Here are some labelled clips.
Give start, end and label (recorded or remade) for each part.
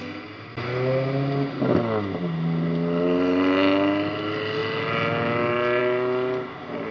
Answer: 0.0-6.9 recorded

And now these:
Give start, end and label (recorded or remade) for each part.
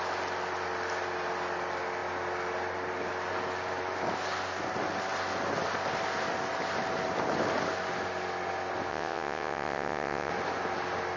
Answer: 0.0-8.9 recorded; 8.9-10.3 remade; 10.3-11.2 recorded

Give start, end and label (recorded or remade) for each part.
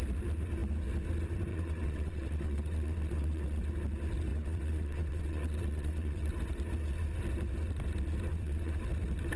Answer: 0.0-1.5 recorded; 1.5-3.6 remade; 3.6-4.3 recorded; 4.3-6.3 remade; 6.3-8.3 recorded; 8.3-8.8 remade; 8.8-9.4 recorded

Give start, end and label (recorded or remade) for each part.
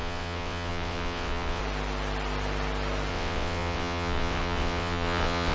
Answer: 0.0-1.6 remade; 1.6-3.1 recorded; 3.1-5.5 remade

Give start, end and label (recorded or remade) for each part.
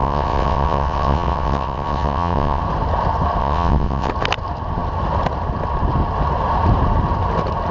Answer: 0.0-2.6 remade; 2.6-3.4 recorded; 3.4-4.1 remade; 4.1-7.7 recorded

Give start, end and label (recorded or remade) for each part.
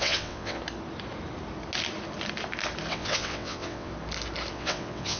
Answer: 0.0-0.6 remade; 0.6-2.9 recorded; 2.9-3.9 remade; 3.9-4.5 recorded; 4.5-5.2 remade